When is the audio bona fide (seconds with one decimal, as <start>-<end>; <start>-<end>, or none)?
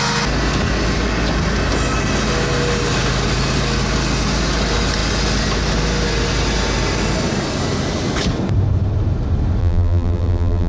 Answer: 0.0-9.6